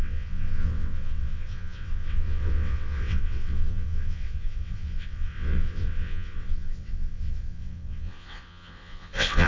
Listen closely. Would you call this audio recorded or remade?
remade